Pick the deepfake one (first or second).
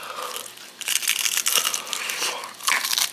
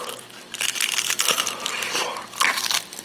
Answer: second